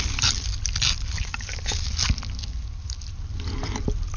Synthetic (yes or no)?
no